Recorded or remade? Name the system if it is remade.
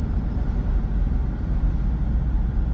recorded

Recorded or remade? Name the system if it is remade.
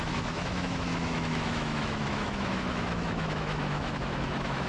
remade, autoencoder, DAC-VAE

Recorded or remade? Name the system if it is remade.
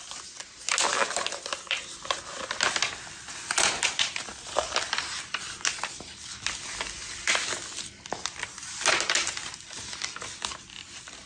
recorded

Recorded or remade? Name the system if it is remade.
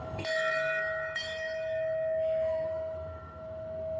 remade, autoencoder, DAC-VAE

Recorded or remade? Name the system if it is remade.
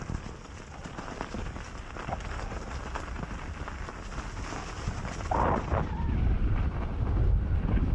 recorded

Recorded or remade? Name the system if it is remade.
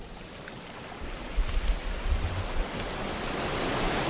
recorded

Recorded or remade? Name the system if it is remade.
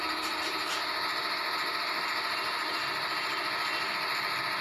recorded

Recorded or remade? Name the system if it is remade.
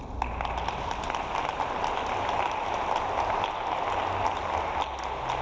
recorded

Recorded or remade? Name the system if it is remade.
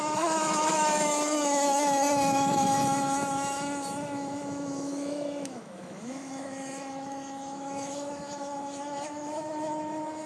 remade, autoencoder, DAC-VAE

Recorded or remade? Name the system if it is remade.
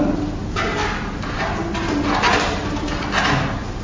recorded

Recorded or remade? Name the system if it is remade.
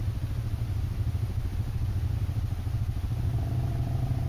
recorded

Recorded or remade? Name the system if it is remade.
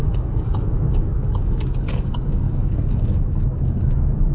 remade, codec, DAC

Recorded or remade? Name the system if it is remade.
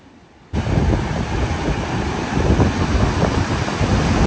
recorded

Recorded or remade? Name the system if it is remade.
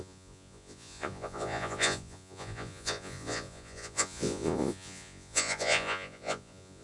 remade, vocoder, Vocos